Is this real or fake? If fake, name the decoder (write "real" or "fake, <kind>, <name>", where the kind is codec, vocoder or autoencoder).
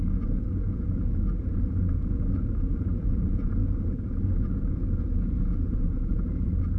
fake, vocoder, Vocos